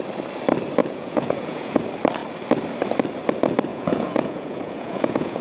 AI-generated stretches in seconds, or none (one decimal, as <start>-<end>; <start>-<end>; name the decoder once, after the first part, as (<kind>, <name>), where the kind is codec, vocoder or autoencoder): 0.8-1.8 (vocoder, Vocos); 3.7-5.4